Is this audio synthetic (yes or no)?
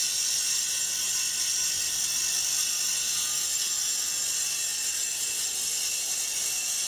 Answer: no